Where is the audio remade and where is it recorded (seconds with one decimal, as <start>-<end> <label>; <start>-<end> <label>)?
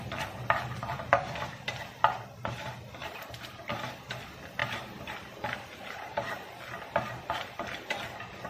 0.0-3.0 recorded; 3.0-3.7 remade; 3.7-4.6 recorded; 4.6-7.1 remade; 7.1-8.5 recorded